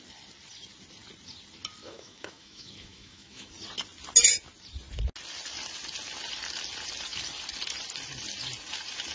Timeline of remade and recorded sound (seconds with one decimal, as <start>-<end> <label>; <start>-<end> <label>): 0.0-1.8 recorded; 1.8-3.5 remade; 3.5-9.1 recorded